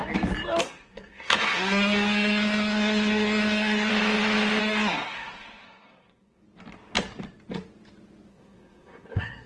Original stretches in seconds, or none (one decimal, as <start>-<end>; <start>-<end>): 0.0-0.6; 3.9-4.6; 6.4-8.3